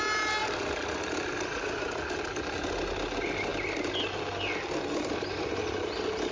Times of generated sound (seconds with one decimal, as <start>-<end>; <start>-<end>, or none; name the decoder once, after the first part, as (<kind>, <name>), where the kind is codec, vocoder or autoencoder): none